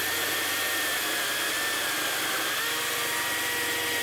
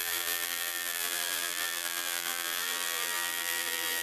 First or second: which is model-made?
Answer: second